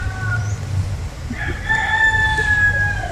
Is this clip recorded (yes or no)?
yes